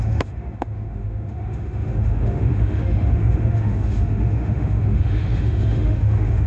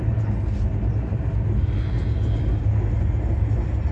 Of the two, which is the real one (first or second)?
second